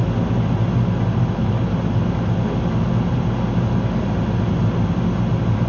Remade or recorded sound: recorded